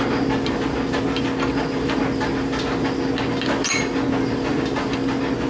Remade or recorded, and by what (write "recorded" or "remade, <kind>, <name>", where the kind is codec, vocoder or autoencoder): recorded